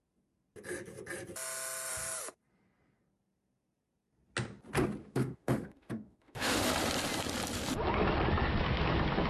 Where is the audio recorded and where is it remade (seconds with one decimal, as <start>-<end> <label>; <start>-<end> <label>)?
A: 0.0-5.0 recorded; 5.0-6.7 remade; 6.7-9.3 recorded